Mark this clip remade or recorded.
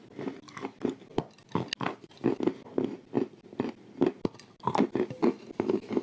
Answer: recorded